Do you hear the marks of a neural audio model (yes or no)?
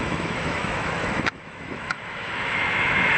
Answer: yes